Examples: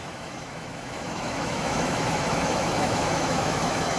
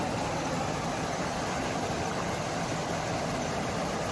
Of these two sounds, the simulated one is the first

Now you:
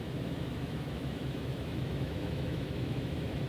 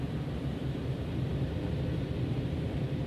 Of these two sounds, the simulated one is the first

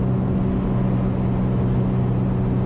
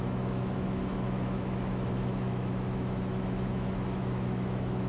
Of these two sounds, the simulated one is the second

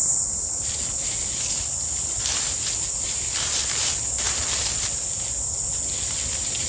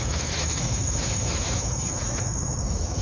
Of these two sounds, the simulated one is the second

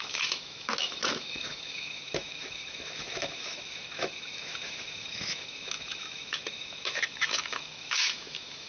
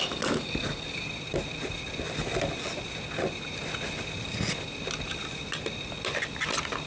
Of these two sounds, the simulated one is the first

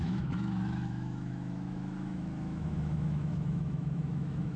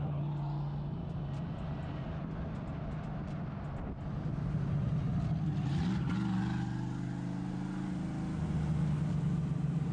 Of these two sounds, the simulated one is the first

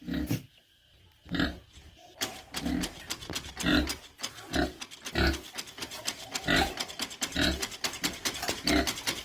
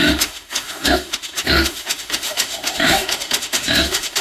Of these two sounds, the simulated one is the second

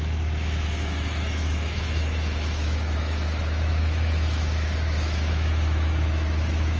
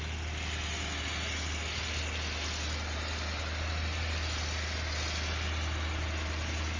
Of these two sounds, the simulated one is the first